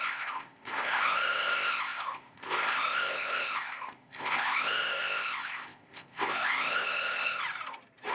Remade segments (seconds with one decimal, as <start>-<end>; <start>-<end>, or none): 0.0-7.4